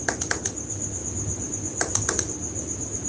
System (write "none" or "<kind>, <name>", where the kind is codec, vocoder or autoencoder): none